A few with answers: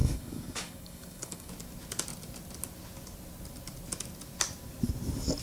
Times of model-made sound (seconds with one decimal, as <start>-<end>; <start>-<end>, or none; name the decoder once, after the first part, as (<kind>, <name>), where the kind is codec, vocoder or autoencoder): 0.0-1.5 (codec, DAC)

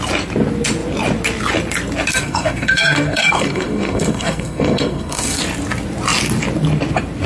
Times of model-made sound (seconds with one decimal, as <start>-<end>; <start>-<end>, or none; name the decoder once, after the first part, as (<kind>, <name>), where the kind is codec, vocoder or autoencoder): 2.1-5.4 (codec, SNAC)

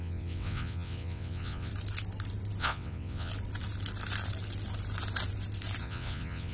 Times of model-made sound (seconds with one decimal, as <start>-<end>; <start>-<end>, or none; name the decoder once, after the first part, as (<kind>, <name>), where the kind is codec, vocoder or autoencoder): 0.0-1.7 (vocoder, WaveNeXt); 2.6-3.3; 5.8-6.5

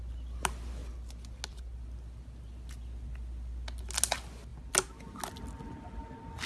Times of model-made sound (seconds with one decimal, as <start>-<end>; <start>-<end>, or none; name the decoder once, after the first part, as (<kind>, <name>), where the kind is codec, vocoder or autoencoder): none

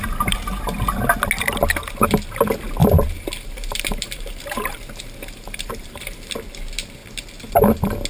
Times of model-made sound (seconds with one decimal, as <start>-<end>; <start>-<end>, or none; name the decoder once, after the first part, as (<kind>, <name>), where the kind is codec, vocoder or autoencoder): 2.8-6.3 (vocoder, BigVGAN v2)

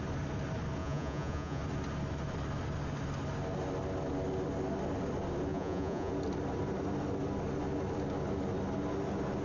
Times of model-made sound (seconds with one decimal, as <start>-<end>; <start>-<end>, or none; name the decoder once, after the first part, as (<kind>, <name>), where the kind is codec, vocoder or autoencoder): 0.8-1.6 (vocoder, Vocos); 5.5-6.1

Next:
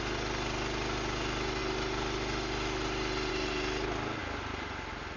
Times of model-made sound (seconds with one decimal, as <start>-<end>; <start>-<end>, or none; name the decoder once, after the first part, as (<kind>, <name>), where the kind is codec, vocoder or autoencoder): none

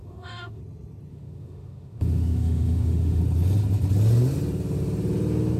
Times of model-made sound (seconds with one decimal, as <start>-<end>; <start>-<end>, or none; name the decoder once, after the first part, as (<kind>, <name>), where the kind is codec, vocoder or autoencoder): 0.0-0.6 (autoencoder, DAC-VAE); 1.1-3.2